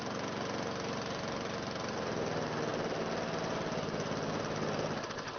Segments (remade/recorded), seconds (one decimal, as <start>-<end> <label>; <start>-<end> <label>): 0.0-5.4 recorded